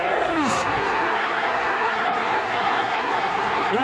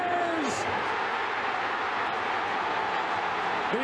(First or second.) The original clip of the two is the second